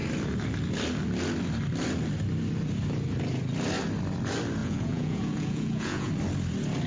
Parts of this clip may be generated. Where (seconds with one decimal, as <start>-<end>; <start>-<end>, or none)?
4.6-6.1